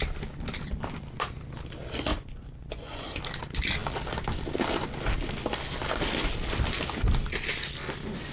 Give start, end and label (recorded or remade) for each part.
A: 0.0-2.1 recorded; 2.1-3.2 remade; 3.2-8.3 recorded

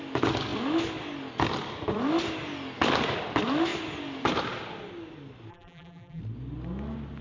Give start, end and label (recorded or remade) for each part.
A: 0.0-5.5 recorded; 5.5-6.2 remade; 6.2-7.2 recorded

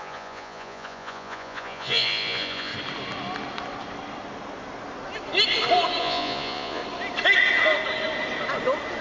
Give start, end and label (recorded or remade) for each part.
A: 0.0-2.7 remade; 2.7-6.0 recorded; 6.0-6.8 remade; 6.8-9.0 recorded

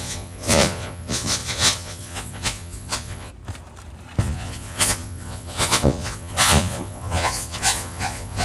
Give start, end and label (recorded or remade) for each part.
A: 0.0-3.3 remade; 3.3-4.2 recorded; 4.2-8.4 remade

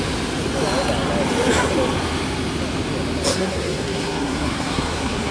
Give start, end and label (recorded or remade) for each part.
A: 0.0-3.3 recorded; 3.3-5.3 remade